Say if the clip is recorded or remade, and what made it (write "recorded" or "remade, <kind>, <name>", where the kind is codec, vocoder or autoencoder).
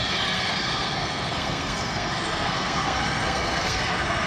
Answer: remade, codec, SNAC